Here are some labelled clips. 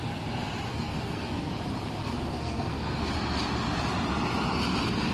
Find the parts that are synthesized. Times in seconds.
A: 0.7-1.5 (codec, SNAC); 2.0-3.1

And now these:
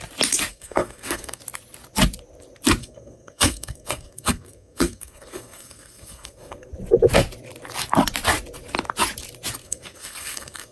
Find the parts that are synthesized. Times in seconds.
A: 0.5-1.4 (codec, SNAC); 2.8-6.7; 9.6-10.7

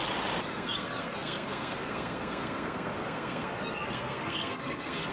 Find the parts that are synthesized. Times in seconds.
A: 0.5-5.1 (codec, SNAC)